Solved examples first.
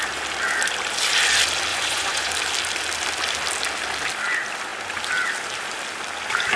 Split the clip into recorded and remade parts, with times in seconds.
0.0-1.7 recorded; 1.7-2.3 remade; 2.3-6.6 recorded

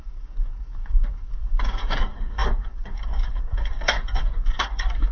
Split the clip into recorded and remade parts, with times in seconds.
0.0-5.1 remade